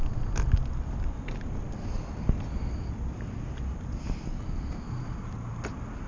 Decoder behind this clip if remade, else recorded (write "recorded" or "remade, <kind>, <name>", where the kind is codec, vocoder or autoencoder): recorded